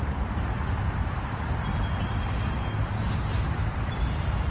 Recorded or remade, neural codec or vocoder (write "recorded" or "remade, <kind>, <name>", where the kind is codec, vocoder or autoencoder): recorded